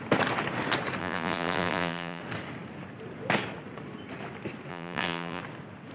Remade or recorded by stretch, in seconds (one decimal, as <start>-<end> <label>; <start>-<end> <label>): 0.0-1.0 recorded; 1.0-2.2 remade; 2.2-4.7 recorded; 4.7-5.4 remade; 5.4-5.9 recorded